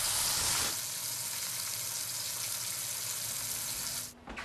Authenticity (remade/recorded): recorded